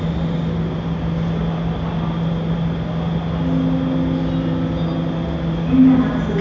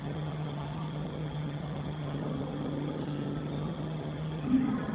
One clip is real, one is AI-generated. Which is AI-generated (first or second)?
second